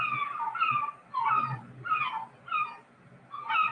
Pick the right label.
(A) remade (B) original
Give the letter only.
B